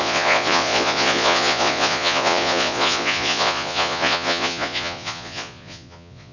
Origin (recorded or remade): remade